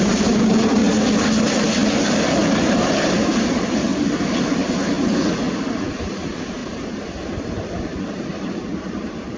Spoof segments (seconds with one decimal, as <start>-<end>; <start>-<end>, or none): 0.0-0.8; 2.6-3.9; 5.9-9.4